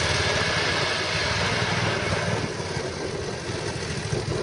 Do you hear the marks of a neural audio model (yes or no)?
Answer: no